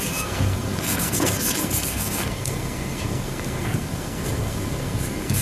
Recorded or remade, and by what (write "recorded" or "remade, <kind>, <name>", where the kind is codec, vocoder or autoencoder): remade, codec, SNAC